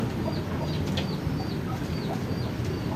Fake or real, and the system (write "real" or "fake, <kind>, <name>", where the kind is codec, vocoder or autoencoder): real